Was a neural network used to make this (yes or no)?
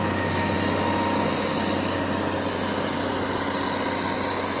no